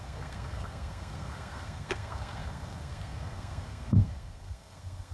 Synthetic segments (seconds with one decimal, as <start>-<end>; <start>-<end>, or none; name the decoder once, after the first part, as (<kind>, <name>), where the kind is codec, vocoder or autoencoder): 0.0-5.1 (codec, SNAC)